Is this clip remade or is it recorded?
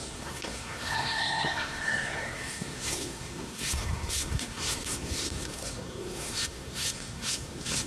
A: remade